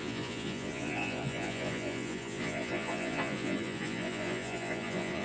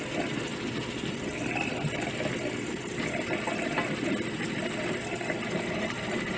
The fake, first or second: first